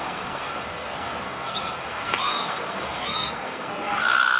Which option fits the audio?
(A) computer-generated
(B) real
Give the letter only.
A